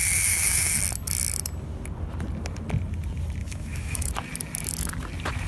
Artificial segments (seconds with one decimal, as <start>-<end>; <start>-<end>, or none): 0.0-0.8; 3.4-4.1